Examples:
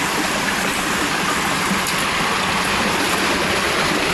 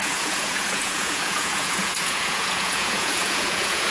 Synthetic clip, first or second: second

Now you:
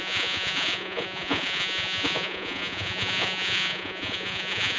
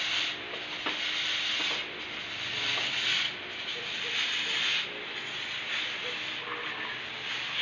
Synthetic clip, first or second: first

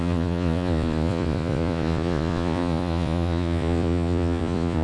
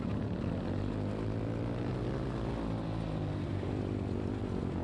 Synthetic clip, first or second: first